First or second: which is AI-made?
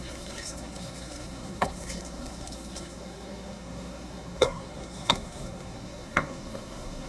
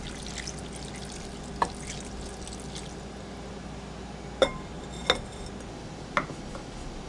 first